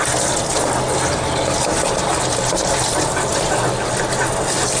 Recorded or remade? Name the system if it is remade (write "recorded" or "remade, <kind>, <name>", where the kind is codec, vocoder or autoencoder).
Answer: recorded